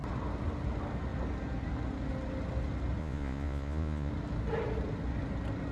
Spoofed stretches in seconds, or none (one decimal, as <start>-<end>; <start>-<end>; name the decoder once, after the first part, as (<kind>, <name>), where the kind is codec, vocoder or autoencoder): 3.0-4.1 (vocoder, Vocos)